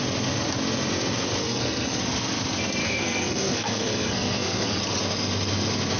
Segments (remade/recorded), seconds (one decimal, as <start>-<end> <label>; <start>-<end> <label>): 0.0-1.4 recorded; 1.4-2.0 remade; 2.0-2.8 recorded; 2.8-4.8 remade; 4.8-6.0 recorded

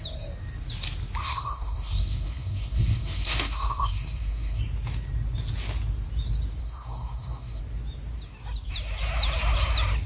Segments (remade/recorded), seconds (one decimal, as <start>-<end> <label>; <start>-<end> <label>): 0.0-1.2 recorded; 1.2-4.6 remade; 4.6-6.6 recorded; 6.6-7.6 remade; 7.6-10.1 recorded

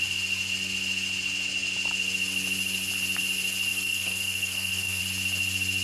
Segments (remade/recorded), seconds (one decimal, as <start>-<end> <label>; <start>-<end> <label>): 0.0-3.7 recorded; 3.7-5.0 remade; 5.0-5.8 recorded

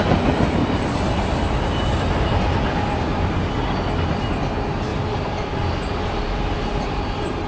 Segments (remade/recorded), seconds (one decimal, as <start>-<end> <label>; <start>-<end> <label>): 0.0-7.5 recorded

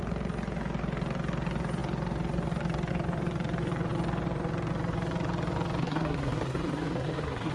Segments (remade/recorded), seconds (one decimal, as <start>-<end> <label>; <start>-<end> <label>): 0.0-5.8 recorded; 5.8-7.5 remade

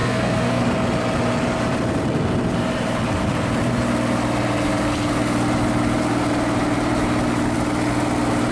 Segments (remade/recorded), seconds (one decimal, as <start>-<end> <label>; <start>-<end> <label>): 0.0-0.6 remade; 0.6-8.5 recorded

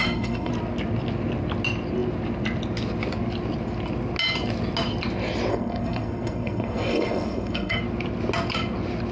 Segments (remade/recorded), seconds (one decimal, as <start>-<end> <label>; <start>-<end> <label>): 0.0-0.5 remade; 0.5-5.5 recorded; 5.5-7.8 remade; 7.8-9.1 recorded